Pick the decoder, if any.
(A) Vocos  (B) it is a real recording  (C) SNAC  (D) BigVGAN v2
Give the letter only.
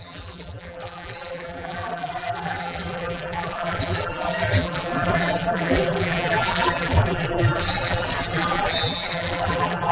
D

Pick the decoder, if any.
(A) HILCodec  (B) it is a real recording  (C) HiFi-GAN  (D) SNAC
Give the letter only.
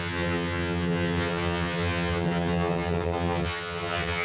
C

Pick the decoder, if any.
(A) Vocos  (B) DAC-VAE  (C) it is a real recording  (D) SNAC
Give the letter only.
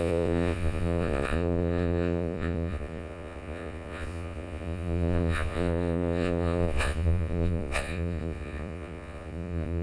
A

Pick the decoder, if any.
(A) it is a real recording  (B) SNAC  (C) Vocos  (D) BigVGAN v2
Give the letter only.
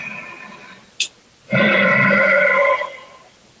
A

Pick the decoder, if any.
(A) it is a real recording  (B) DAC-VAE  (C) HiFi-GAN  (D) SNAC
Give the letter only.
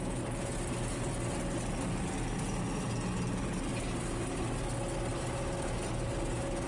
A